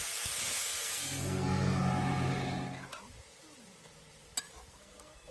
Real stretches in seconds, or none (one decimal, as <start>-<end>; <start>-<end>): 1.8-4.7